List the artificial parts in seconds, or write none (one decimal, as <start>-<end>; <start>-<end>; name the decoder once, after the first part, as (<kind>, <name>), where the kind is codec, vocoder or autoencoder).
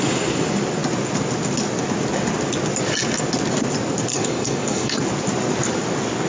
4.1-5.0 (codec, DAC)